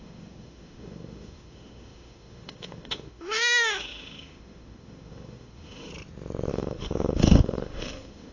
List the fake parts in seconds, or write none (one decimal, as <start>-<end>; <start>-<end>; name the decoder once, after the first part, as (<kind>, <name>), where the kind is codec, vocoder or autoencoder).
0.0-5.9 (autoencoder, DAC-VAE); 6.5-8.3